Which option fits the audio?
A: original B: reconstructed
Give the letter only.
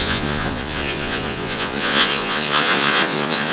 B